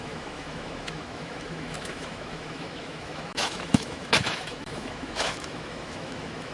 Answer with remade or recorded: remade